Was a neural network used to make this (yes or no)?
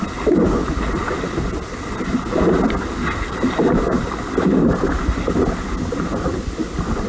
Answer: no